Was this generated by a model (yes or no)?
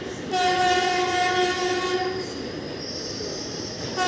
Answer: no